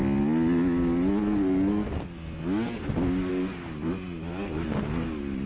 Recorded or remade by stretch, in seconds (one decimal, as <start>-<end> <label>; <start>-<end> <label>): 0.0-5.5 recorded